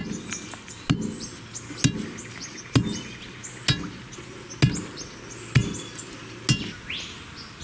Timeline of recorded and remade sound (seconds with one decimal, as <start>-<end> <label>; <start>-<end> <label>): 0.0-7.6 recorded